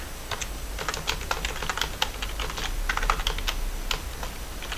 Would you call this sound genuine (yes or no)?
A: yes